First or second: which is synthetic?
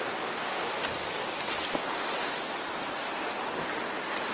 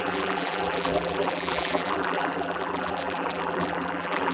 second